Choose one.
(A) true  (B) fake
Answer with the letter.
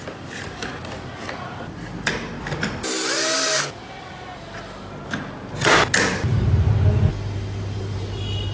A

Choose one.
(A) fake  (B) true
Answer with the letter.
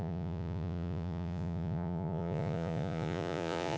A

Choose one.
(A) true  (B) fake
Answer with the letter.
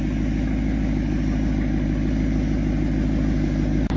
A